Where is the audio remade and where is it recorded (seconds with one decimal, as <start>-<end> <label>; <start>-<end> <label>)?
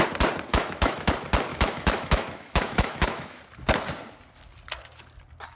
0.0-0.5 recorded; 0.5-1.1 remade; 1.1-1.5 recorded; 1.5-3.4 remade; 3.4-5.6 recorded